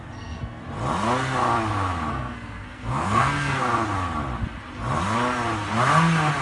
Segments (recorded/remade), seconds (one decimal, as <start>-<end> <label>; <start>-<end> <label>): 0.0-0.6 remade; 0.6-2.1 recorded; 2.1-3.6 remade; 3.6-6.4 recorded